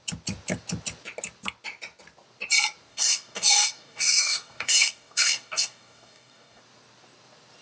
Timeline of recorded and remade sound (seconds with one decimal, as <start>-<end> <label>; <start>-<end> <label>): 0.0-2.9 recorded; 2.9-6.6 remade; 6.6-7.6 recorded